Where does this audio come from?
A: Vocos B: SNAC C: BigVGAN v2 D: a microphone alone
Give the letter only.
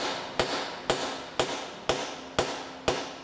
D